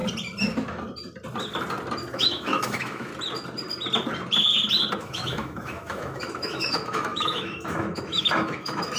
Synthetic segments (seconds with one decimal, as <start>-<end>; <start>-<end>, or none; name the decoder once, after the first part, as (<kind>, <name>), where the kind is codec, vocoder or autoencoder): 2.1-3.1 (autoencoder, DAC-VAE); 5.0-9.0